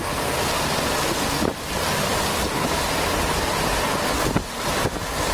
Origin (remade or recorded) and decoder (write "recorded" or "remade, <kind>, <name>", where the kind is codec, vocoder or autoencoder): recorded